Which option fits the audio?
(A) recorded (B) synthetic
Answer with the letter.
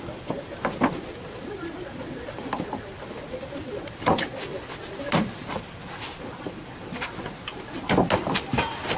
A